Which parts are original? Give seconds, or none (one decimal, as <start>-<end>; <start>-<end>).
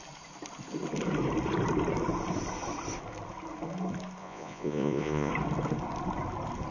0.0-4.2; 5.3-6.7